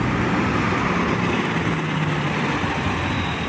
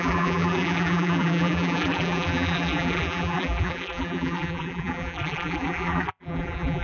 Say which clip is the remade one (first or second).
second